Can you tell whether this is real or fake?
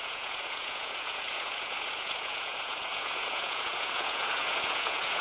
fake